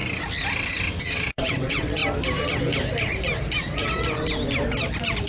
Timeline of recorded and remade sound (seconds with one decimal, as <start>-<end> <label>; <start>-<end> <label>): 0.0-1.0 recorded; 1.0-2.0 remade; 2.0-5.3 recorded